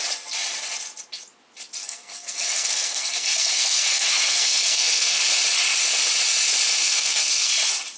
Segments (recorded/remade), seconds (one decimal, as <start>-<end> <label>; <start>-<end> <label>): 0.0-1.8 recorded; 1.8-5.2 remade; 5.2-6.8 recorded; 6.8-7.5 remade; 7.5-8.0 recorded